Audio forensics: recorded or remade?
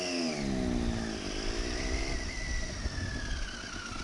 recorded